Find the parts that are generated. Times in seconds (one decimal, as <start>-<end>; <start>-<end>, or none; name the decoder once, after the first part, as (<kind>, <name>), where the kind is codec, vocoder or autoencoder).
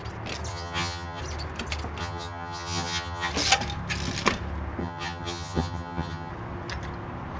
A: 0.5-1.2 (vocoder, HiFi-GAN); 2.0-3.3; 4.8-6.3